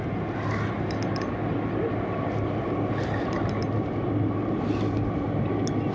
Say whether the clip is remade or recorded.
recorded